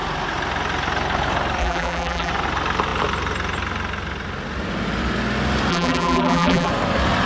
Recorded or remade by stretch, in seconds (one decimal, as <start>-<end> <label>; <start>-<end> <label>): 0.0-1.6 recorded; 1.6-2.3 remade; 2.3-5.7 recorded; 5.7-6.7 remade; 6.7-7.3 recorded